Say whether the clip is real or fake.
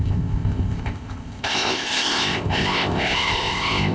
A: fake